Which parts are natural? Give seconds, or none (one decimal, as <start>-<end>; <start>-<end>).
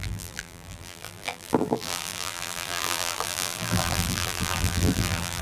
none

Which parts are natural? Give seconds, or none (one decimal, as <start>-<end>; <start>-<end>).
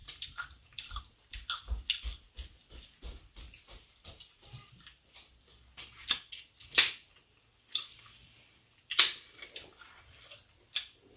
1.0-8.2; 9.0-11.2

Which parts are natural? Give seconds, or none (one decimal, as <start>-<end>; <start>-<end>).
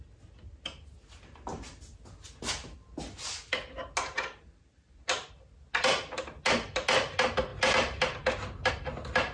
0.0-9.3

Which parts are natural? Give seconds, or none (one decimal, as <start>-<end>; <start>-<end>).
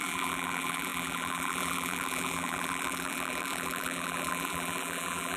none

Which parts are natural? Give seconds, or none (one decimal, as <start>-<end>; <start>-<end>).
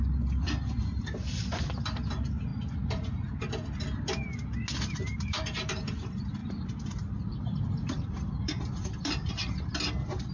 0.0-2.5; 3.4-5.1; 5.9-6.4; 9.3-10.3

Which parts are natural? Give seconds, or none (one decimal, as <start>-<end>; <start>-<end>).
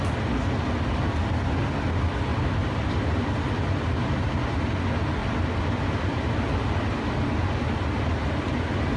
0.0-2.3; 3.3-5.2; 7.9-9.0